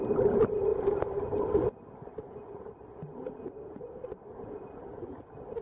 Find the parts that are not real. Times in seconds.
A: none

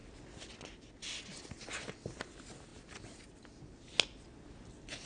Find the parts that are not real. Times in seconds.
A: none

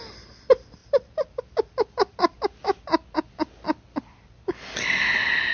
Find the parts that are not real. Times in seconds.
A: none

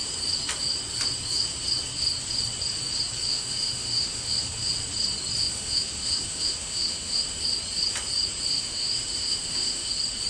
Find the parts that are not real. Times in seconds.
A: 3.3-4.7 (autoencoder, DAC-VAE); 5.4-7.4; 8.5-9.9

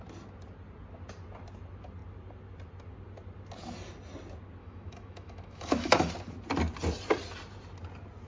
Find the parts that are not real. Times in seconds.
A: 4.6-6.1 (autoencoder, DAC-VAE)

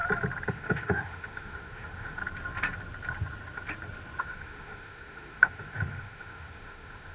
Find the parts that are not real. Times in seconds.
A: 0.5-2.2 (autoencoder, DAC-VAE); 4.2-7.1